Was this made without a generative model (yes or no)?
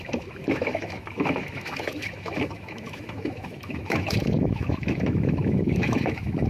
no